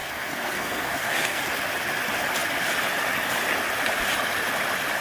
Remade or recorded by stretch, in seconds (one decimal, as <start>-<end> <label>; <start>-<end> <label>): 0.0-1.4 remade; 1.4-5.0 recorded